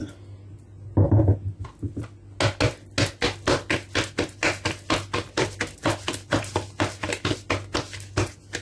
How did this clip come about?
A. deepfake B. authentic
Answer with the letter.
B